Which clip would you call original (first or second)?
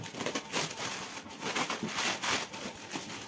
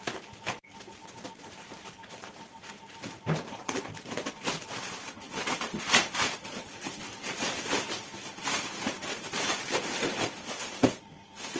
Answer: first